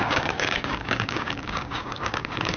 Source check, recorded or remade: remade